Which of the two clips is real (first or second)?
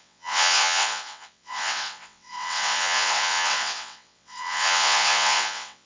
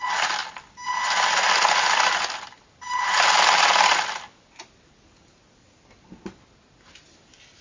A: second